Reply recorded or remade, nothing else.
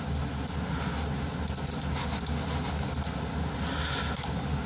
recorded